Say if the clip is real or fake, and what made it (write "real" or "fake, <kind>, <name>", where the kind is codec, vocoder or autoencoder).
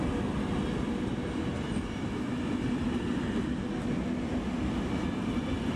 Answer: real